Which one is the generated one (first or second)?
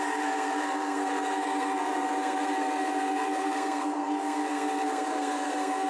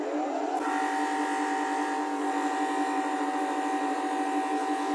first